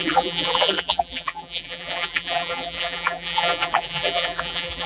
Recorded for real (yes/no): no